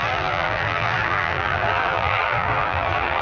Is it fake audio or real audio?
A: fake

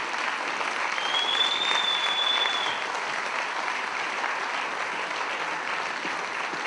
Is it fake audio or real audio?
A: real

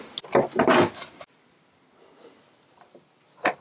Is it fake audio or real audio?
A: real